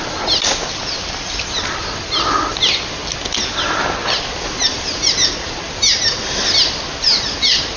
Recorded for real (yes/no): yes